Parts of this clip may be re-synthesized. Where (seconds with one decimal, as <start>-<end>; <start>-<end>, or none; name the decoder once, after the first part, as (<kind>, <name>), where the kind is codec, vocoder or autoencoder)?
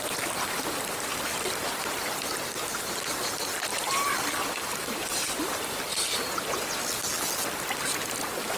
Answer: 3.7-5.7 (vocoder, BigVGAN v2)